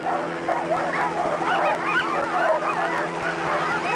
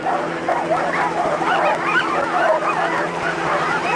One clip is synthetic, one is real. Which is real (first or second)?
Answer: first